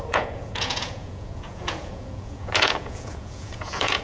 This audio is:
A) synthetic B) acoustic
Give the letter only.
A